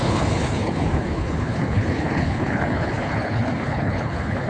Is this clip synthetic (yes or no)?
yes